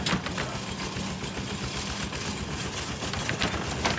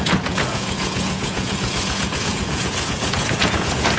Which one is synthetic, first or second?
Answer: second